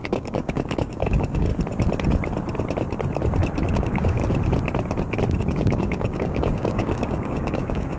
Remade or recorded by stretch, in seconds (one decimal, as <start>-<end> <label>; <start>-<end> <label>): 0.0-1.5 remade; 1.5-3.7 recorded; 3.7-4.2 remade; 4.2-5.4 recorded; 5.4-8.0 remade